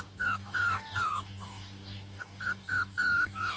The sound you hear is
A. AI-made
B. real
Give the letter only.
A